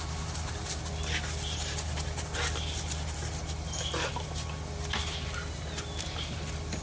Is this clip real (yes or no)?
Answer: yes